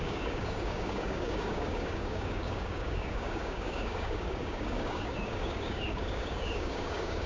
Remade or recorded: remade